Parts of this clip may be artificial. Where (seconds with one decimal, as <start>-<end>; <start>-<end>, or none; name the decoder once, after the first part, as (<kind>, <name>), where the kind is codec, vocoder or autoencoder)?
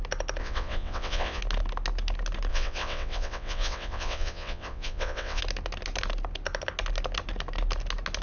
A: 0.4-1.4 (vocoder, WaveNeXt); 2.5-5.4